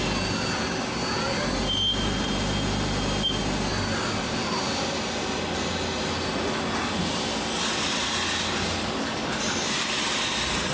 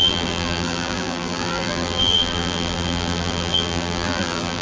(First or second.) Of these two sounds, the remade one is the second